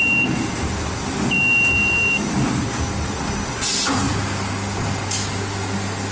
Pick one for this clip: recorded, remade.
recorded